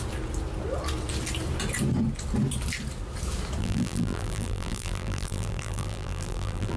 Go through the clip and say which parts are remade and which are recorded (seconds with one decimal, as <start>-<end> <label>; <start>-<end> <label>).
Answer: 0.0-3.6 recorded; 3.6-6.8 remade